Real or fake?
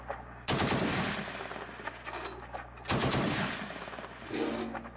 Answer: real